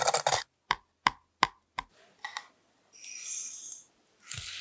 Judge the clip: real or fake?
real